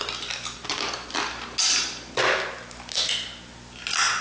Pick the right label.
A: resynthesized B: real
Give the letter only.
B